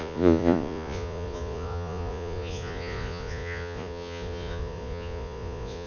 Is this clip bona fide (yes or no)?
no